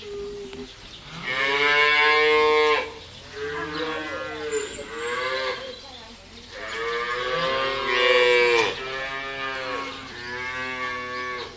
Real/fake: real